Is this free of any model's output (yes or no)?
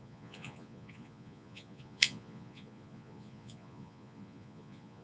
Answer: no